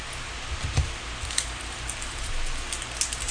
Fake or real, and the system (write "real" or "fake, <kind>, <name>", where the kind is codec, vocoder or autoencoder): real